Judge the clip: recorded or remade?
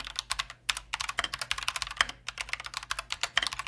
recorded